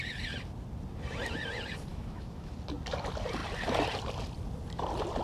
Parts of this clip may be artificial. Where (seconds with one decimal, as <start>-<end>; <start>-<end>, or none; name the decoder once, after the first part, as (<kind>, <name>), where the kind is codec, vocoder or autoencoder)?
1.9-2.5 (autoencoder, DAC-VAE)